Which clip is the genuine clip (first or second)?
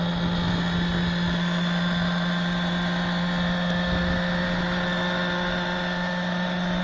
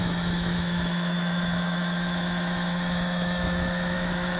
first